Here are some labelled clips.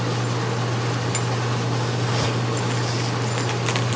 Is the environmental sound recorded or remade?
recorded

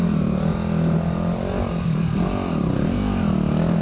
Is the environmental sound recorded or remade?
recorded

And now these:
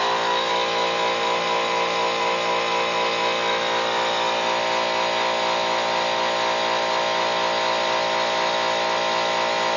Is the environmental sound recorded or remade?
recorded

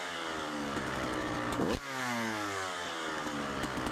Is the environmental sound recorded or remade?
remade